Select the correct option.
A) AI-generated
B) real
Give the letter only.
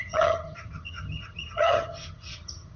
A